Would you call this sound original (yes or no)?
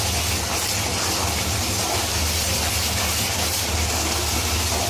yes